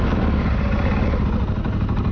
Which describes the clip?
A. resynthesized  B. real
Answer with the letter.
B